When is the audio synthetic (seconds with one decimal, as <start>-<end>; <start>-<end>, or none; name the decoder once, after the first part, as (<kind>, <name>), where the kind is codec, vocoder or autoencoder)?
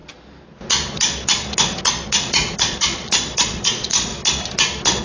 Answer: 2.3-4.1 (vocoder, Vocos)